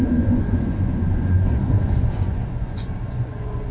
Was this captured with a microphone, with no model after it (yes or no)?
no